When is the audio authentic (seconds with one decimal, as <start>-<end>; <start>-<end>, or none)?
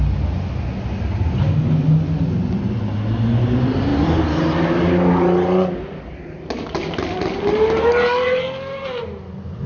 0.0-9.7